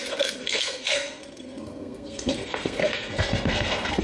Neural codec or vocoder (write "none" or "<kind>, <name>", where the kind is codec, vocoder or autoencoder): codec, SNAC